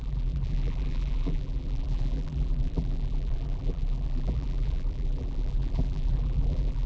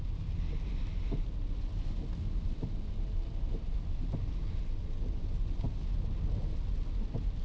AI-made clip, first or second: first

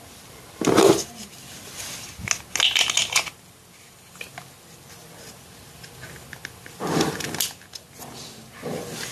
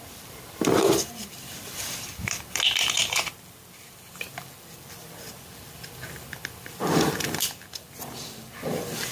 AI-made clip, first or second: second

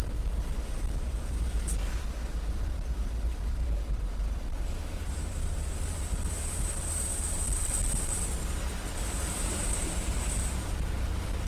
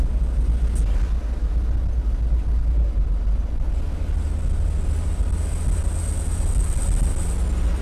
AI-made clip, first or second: first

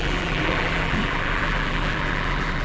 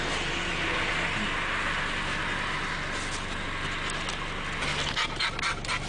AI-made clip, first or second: first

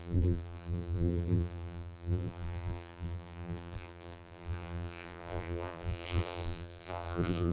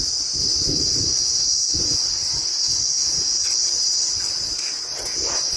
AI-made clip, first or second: first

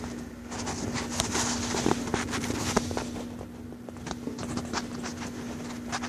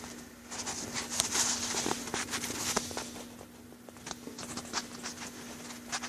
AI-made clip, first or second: first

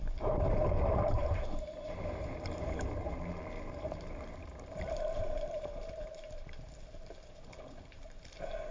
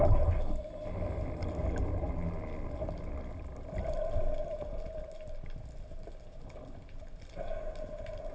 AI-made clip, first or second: first